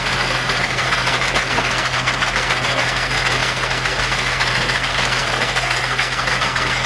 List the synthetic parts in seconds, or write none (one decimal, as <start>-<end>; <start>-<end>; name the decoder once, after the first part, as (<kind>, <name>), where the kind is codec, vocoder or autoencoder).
0.0-6.9 (codec, SNAC)